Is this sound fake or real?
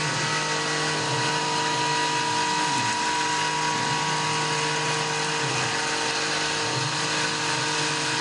real